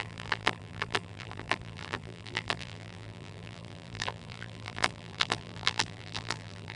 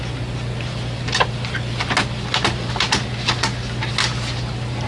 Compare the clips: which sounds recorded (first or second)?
second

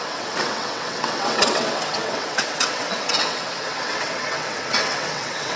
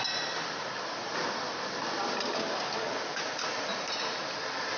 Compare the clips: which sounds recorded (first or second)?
second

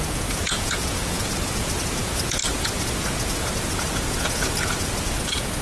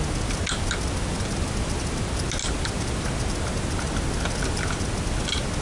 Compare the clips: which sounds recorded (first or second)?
second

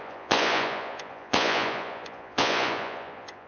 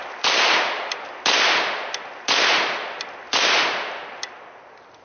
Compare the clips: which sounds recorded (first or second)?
second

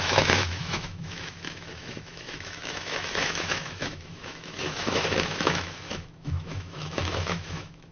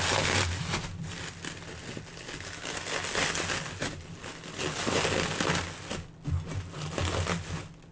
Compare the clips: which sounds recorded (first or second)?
second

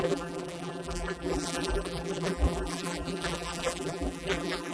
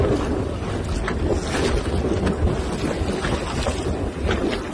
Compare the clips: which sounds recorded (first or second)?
second